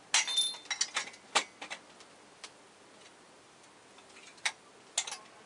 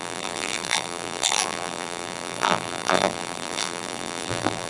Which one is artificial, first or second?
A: second